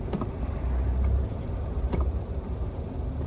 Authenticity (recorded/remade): remade